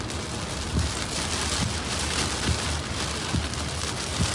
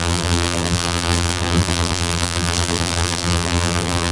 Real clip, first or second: first